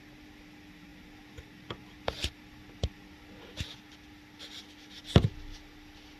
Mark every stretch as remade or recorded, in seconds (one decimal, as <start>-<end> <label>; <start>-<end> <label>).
0.0-6.2 recorded